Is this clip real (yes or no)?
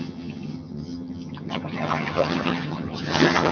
no